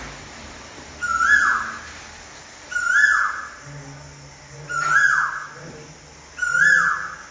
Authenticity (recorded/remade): recorded